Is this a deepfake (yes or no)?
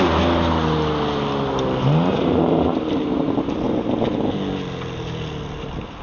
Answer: no